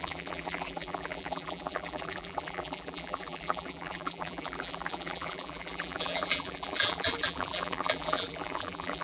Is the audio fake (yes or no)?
yes